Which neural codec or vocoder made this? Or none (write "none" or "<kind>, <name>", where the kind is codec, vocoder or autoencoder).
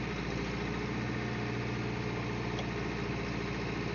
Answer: none